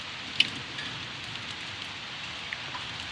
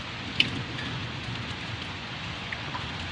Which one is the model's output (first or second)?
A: second